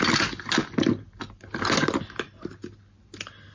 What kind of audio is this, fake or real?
real